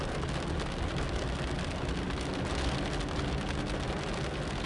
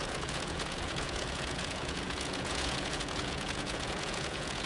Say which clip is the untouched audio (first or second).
first